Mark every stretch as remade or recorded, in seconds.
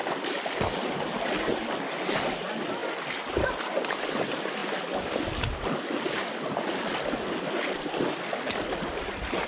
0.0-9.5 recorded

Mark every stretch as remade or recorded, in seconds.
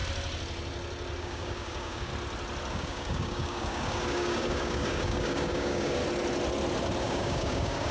0.0-1.2 recorded; 1.2-2.1 remade; 2.1-2.7 recorded; 2.7-6.0 remade; 6.0-7.0 recorded; 7.0-7.9 remade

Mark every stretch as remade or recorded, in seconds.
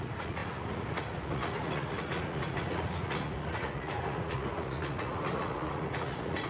0.0-6.5 remade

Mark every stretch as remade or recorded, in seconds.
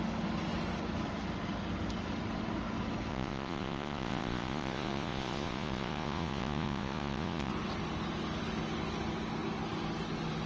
0.0-3.1 recorded; 3.1-7.5 remade; 7.5-10.5 recorded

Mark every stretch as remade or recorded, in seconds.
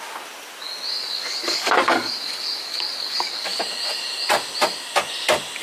0.0-0.9 recorded; 0.9-3.6 remade; 3.6-5.6 recorded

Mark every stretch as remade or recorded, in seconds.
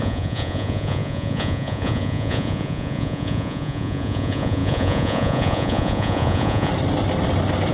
0.0-6.7 remade; 6.7-7.7 recorded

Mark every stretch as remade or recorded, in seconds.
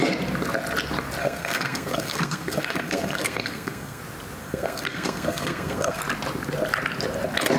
0.0-1.2 recorded; 1.2-4.0 remade; 4.0-4.4 recorded; 4.4-6.0 remade; 6.0-7.6 recorded